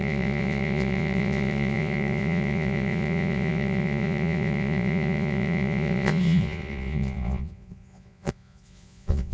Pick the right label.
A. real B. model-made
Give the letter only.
B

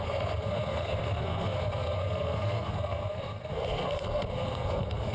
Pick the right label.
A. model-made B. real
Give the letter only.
A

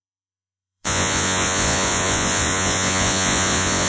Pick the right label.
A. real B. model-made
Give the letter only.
B